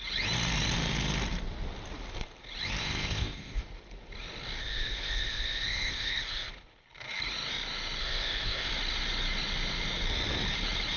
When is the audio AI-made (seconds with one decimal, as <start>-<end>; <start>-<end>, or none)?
2.8-3.6; 4.6-6.5; 8.0-8.7

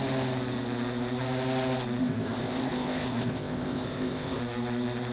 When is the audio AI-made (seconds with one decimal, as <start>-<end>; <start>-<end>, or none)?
2.0-4.4

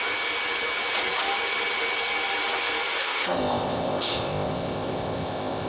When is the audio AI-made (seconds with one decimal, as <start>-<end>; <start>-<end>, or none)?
3.0-5.7